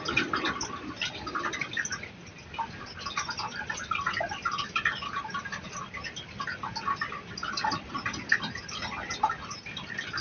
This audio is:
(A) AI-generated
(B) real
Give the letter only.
B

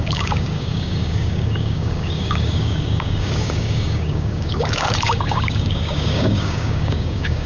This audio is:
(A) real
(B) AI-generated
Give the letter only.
B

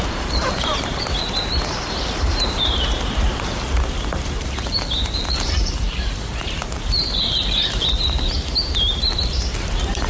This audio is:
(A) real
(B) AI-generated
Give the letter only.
B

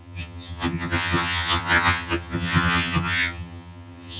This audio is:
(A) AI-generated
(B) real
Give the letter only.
A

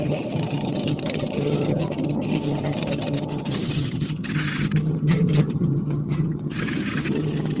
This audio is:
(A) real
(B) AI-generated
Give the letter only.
B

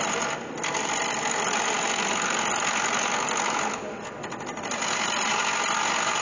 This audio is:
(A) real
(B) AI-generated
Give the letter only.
A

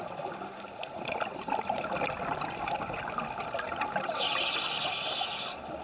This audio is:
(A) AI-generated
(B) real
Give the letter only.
B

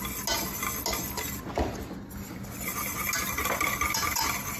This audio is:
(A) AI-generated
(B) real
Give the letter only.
B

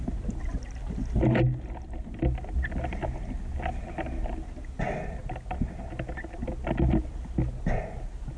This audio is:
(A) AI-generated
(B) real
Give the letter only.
B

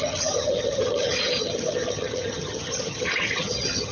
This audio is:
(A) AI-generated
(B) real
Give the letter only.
A